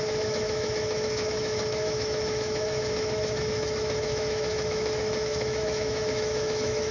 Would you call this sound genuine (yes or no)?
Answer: no